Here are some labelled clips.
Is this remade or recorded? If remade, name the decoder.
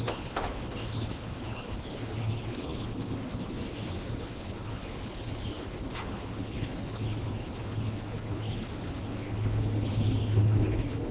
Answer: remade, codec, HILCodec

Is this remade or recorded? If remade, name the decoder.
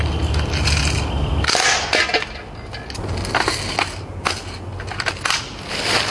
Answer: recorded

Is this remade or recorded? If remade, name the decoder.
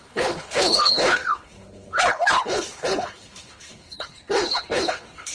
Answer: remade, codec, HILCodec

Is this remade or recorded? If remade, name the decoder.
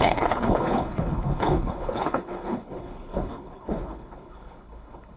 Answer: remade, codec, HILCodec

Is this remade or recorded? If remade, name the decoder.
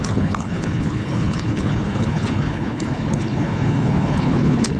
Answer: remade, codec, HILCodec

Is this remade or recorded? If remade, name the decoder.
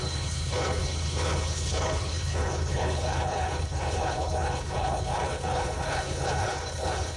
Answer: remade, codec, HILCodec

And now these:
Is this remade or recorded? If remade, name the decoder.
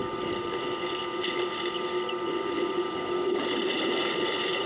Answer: recorded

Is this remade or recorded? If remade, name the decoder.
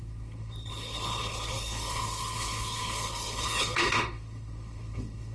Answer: remade, codec, HILCodec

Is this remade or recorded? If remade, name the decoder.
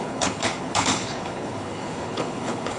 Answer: remade, codec, HILCodec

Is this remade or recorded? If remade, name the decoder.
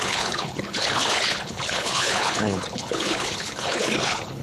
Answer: remade, codec, HILCodec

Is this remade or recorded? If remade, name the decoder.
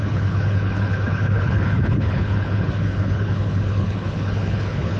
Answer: remade, codec, HILCodec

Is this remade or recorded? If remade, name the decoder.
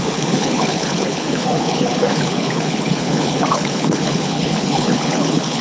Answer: remade, codec, HILCodec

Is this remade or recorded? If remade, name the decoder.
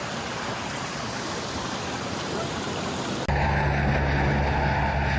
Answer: recorded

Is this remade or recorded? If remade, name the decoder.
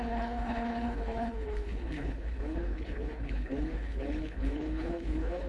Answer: remade, codec, HILCodec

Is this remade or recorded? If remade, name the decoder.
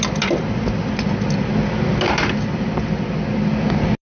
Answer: recorded